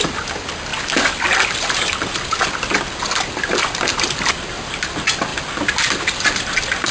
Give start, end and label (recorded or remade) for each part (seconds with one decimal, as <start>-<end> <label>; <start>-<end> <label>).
0.0-6.9 recorded